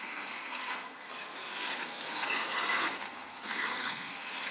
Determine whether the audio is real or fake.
fake